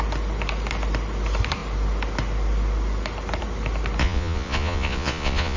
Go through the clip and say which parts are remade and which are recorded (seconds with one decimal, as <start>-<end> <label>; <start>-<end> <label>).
0.0-4.0 recorded; 4.0-5.6 remade